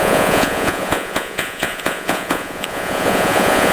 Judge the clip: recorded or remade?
remade